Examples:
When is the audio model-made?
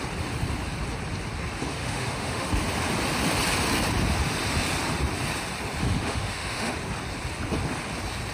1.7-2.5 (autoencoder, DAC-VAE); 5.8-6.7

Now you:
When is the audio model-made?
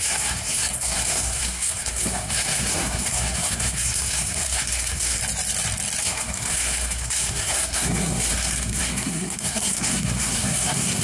0.0-5.2 (codec, SNAC); 6.0-11.0